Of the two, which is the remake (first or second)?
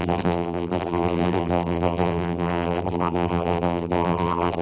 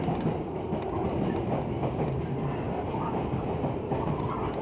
first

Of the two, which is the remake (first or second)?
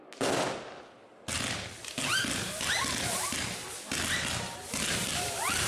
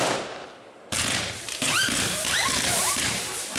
second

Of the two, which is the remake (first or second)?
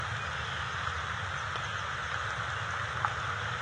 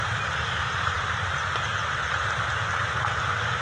second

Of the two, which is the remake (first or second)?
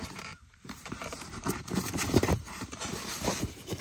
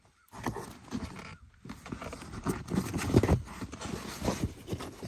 first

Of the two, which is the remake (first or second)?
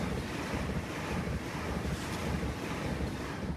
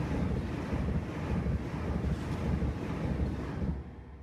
first